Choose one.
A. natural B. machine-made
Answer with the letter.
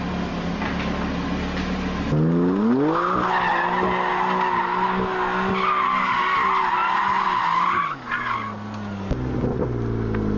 A